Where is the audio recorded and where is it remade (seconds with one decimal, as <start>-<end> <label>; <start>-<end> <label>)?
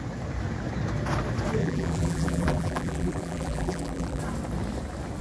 0.0-1.6 recorded; 1.6-4.2 remade; 4.2-5.2 recorded